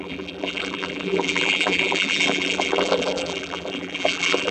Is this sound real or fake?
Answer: fake